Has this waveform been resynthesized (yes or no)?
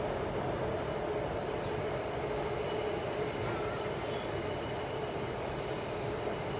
no